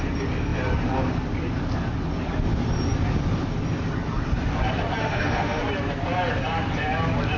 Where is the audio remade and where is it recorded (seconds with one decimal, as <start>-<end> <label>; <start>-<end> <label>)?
0.0-5.0 recorded; 5.0-5.6 remade; 5.6-7.4 recorded

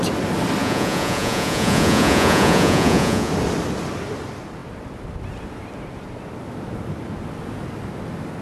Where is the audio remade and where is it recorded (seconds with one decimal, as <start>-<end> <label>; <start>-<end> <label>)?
0.0-0.6 recorded; 0.6-3.3 remade; 3.3-8.4 recorded

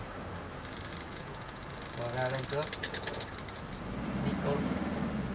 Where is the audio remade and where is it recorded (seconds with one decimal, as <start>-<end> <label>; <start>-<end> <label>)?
0.0-1.1 recorded; 1.1-1.6 remade; 1.6-2.8 recorded; 2.8-3.3 remade; 3.3-5.3 recorded

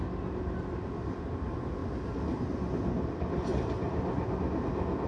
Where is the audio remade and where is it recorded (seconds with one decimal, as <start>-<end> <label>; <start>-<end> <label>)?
0.0-1.8 recorded; 1.8-2.4 remade; 2.4-3.5 recorded; 3.5-4.3 remade; 4.3-5.1 recorded

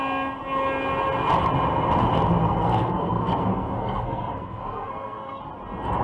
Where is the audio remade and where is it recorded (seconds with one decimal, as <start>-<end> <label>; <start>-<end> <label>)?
0.0-2.4 recorded; 2.4-5.4 remade; 5.4-6.0 recorded

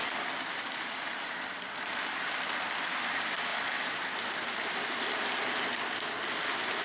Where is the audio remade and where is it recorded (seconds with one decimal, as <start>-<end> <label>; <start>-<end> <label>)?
0.0-2.8 remade; 2.8-3.5 recorded; 3.5-6.8 remade

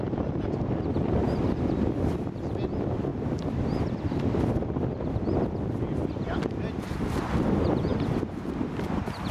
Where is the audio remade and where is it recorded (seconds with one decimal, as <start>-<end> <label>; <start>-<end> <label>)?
0.0-9.3 recorded